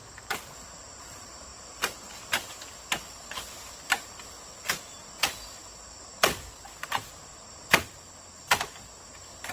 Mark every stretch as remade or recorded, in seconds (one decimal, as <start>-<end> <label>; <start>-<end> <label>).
0.0-1.5 recorded; 1.5-2.5 remade; 2.5-9.5 recorded